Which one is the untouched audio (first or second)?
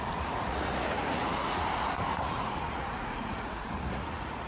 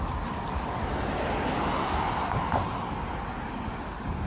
second